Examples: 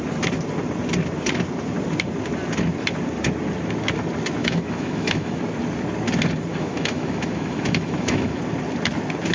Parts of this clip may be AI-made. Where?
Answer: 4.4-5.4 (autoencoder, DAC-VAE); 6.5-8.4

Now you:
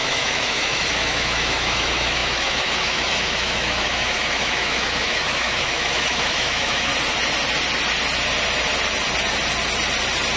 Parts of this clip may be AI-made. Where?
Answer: 0.0-6.9 (autoencoder, DAC-VAE)

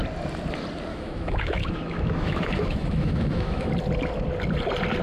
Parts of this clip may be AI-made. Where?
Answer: 0.9-3.7 (autoencoder, DAC-VAE)

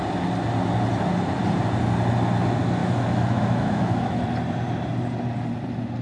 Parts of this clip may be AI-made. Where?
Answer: 2.8-4.2 (autoencoder, DAC-VAE)

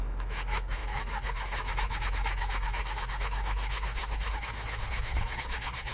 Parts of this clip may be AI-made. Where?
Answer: 0.0-5.9 (autoencoder, DAC-VAE)